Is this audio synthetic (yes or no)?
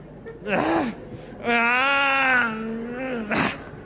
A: no